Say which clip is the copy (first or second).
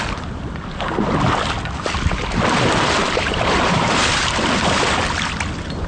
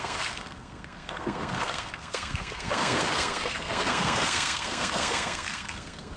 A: second